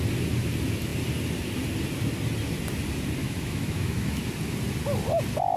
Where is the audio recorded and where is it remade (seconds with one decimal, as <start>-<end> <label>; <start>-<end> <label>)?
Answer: 0.0-3.2 recorded; 3.2-4.2 remade; 4.2-5.6 recorded